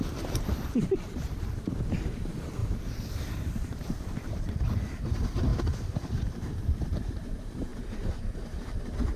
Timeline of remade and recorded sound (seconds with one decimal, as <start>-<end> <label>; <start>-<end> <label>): 0.0-5.5 remade; 5.5-6.1 recorded; 6.1-9.2 remade